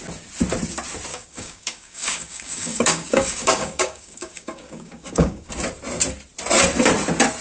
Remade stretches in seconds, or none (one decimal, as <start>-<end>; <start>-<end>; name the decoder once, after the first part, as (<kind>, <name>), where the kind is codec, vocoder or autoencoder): 1.1-5.5 (codec, DAC)